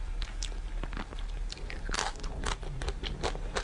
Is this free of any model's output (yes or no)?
yes